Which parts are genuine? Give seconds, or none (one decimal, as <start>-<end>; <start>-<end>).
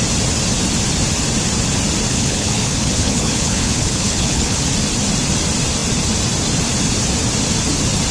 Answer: 0.0-2.1; 4.6-8.1